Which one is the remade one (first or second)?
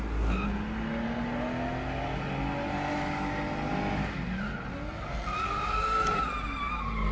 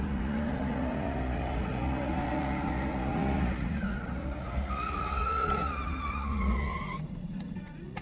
second